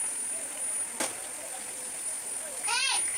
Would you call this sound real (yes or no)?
yes